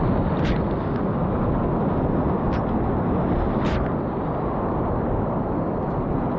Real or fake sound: real